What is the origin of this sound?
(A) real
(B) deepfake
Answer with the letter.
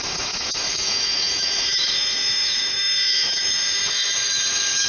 B